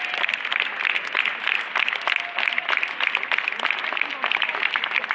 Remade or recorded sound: recorded